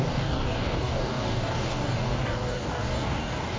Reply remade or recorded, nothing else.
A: remade